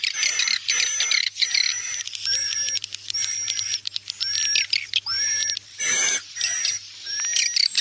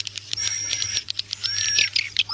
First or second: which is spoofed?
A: second